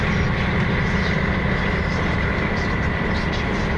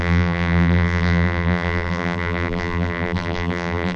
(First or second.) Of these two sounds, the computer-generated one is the second